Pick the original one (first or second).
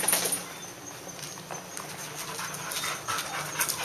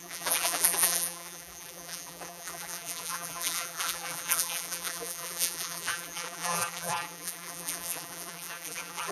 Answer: first